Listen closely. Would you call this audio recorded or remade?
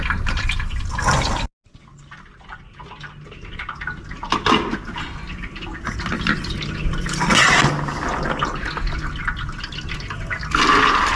recorded